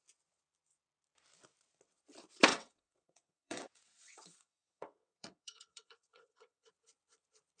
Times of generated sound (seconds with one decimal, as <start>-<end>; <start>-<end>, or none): 2.5-6.7